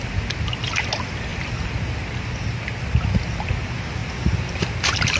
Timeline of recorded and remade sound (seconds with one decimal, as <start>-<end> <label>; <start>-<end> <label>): 0.0-1.3 recorded; 1.3-2.4 remade; 2.4-4.0 recorded; 4.0-4.6 remade; 4.6-5.2 recorded